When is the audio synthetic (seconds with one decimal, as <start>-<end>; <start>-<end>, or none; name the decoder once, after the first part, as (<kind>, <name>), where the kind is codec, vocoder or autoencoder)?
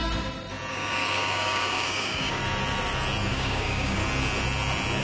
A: 0.7-2.4 (codec, DAC); 3.3-4.0